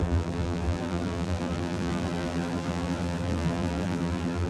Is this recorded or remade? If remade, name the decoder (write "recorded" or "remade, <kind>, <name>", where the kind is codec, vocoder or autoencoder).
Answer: remade, vocoder, BigVGAN v2